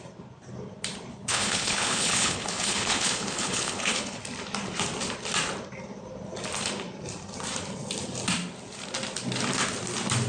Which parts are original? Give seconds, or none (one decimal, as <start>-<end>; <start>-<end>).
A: 0.0-1.1; 4.2-10.3